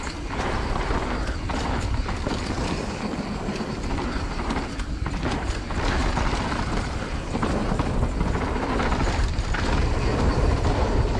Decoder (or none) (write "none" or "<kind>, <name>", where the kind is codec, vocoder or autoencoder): vocoder, BigVGAN v2